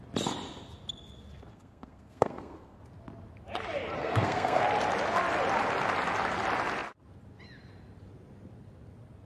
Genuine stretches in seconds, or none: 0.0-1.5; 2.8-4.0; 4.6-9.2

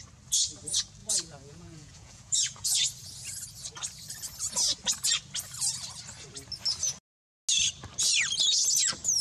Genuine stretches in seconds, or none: 0.0-1.0; 2.7-9.2

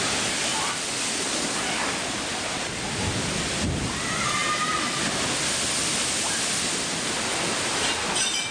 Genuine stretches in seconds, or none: 0.0-0.5; 1.0-8.5

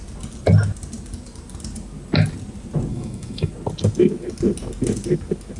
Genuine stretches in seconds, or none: 0.0-2.9; 3.5-5.6

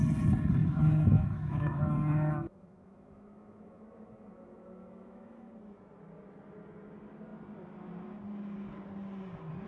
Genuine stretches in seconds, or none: 0.0-0.6; 5.5-9.7